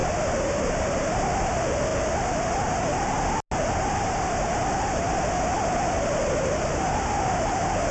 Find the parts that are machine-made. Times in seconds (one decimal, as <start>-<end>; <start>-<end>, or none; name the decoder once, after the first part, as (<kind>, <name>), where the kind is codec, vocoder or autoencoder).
none